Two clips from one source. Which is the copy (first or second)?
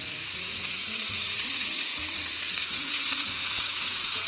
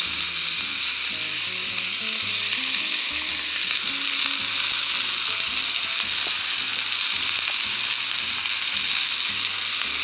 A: first